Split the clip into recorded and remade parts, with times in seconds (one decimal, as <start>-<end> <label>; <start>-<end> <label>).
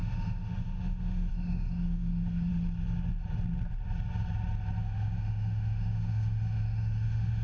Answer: 0.0-2.5 remade; 2.5-4.8 recorded; 4.8-7.4 remade